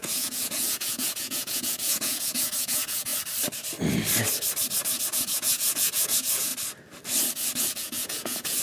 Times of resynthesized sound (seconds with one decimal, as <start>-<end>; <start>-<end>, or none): 0.0-3.1; 5.0-6.5; 7.6-8.6